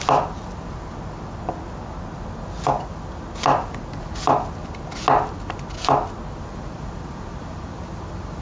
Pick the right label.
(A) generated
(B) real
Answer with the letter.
B